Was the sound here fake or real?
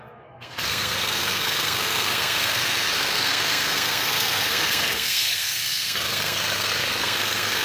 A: fake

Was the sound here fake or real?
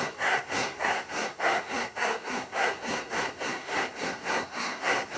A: fake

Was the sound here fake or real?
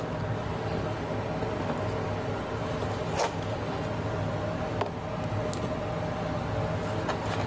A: real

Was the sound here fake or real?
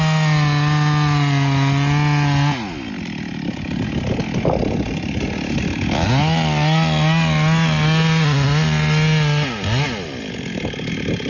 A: real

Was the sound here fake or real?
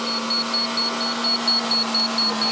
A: real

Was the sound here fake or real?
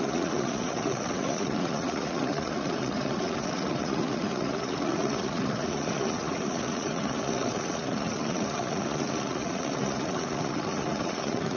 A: fake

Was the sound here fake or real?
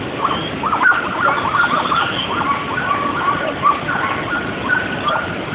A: real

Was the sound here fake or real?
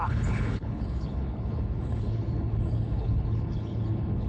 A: fake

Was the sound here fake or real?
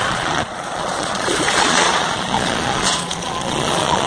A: fake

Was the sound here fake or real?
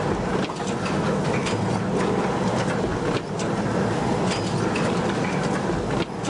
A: real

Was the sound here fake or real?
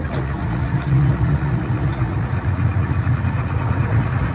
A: fake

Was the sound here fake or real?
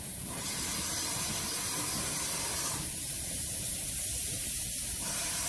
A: fake